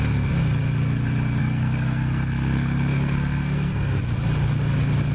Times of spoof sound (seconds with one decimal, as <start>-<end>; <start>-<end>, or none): 1.4-4.0